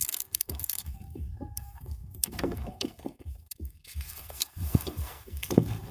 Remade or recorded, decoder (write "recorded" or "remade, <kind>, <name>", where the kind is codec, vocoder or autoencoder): remade, codec, SNAC